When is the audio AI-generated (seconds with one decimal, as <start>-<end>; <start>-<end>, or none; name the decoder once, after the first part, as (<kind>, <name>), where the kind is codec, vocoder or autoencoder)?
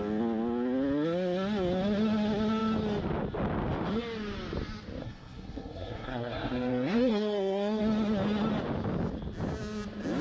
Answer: 5.0-7.8 (codec, SNAC)